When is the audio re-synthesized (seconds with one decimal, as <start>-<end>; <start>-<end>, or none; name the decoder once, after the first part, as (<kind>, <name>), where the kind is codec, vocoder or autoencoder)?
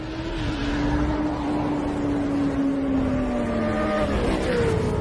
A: none